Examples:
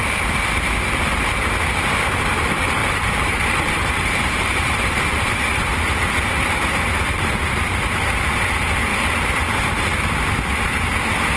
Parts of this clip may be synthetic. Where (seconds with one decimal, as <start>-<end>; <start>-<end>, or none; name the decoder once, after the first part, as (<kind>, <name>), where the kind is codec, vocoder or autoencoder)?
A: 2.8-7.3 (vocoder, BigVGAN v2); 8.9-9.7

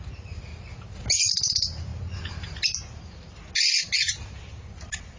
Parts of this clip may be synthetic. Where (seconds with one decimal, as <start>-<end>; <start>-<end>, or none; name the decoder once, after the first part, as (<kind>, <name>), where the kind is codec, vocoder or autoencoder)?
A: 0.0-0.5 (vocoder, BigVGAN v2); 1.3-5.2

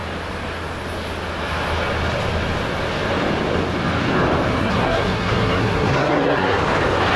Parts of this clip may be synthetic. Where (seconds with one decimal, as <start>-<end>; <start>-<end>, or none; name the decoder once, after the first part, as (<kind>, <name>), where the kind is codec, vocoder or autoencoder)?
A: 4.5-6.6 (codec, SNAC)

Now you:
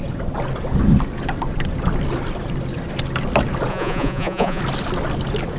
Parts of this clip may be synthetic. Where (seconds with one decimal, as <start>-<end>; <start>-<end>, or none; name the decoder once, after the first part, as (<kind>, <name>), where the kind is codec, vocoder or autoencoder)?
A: 3.7-4.6 (vocoder, Vocos)